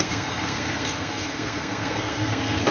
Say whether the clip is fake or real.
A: fake